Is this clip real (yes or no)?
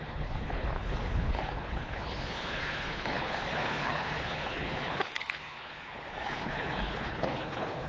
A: no